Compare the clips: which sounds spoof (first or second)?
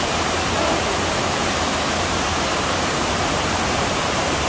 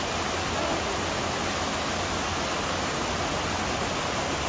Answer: first